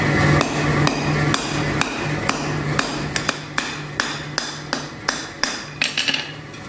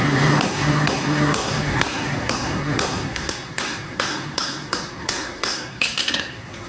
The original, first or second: first